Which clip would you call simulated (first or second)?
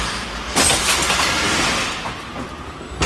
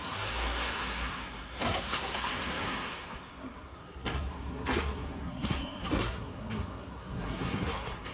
second